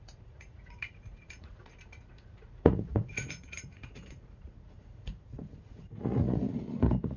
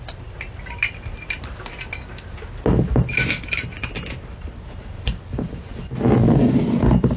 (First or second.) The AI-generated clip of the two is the first